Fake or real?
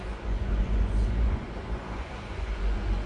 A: fake